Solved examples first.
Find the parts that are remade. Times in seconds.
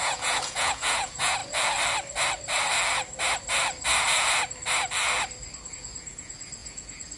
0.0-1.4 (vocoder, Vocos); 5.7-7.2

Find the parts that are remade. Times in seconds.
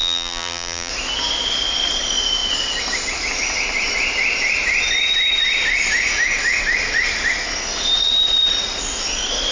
0.0-0.9 (vocoder, BigVGAN v2)